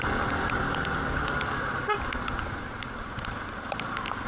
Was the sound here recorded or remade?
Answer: recorded